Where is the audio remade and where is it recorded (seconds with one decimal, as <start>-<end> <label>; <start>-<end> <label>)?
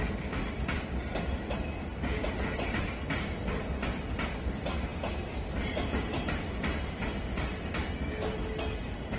0.0-9.2 recorded